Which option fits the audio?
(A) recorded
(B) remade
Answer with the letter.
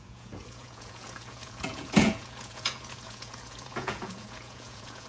B